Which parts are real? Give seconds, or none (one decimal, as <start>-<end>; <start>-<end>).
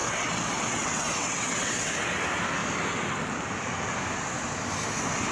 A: 1.9-5.3